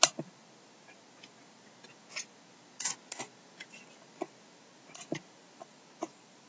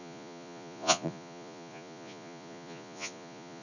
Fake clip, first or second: second